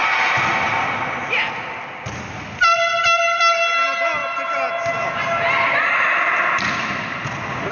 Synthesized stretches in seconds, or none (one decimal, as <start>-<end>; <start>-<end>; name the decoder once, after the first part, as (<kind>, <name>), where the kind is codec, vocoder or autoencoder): none